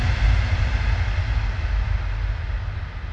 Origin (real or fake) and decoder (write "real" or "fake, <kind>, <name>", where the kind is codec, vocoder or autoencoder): real